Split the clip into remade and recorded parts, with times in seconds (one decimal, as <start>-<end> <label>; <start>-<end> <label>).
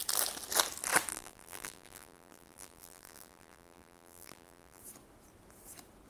0.0-1.1 recorded; 1.1-4.8 remade; 4.8-6.1 recorded